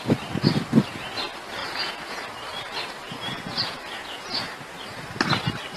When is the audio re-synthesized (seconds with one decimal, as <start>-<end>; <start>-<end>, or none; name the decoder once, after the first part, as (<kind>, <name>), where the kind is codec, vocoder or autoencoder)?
1.6-2.3 (vocoder, Vocos); 3.3-4.5